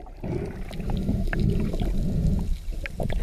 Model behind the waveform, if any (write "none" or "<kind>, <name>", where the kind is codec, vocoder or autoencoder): none